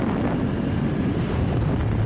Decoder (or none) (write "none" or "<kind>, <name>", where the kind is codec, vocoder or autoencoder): none